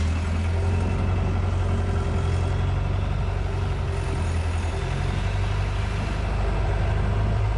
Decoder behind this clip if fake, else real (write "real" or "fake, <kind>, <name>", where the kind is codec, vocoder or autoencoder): real